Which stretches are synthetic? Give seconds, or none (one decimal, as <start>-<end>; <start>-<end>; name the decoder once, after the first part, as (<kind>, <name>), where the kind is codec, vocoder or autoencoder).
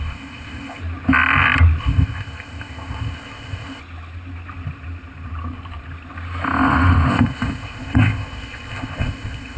0.0-0.8 (codec, ZipCodec); 1.8-3.8; 7.1-9.6